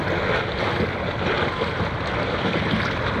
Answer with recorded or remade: recorded